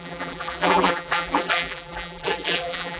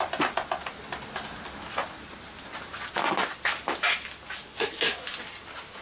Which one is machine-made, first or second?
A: first